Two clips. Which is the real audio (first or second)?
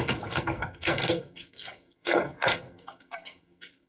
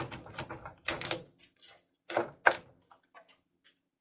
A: second